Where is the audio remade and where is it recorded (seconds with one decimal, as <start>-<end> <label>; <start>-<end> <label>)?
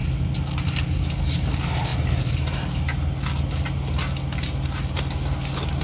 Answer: 0.0-5.8 recorded